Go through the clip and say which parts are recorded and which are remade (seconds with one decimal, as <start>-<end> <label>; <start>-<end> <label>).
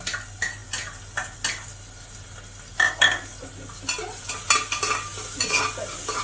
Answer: 0.0-6.2 recorded